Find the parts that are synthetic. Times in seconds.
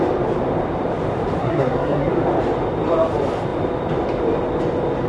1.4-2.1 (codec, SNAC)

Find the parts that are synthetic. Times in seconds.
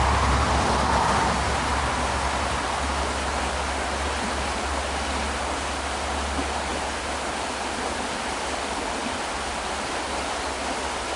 none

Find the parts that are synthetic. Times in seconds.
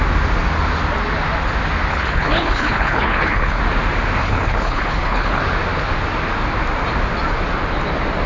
1.9-3.6 (codec, HILCodec); 4.2-5.4